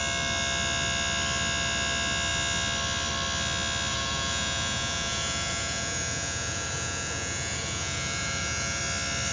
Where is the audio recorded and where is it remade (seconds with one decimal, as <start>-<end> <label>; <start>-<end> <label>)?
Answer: 0.0-3.9 recorded; 3.9-8.8 remade; 8.8-9.3 recorded